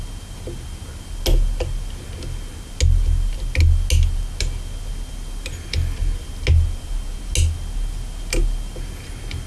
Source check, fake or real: real